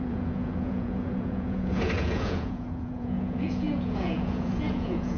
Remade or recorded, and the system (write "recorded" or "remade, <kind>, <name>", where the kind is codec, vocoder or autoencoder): remade, vocoder, Vocos